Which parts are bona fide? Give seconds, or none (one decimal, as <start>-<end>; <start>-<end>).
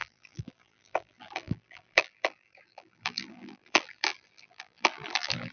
none